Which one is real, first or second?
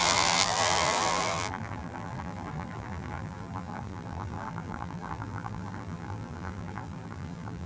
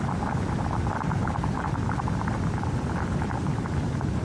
second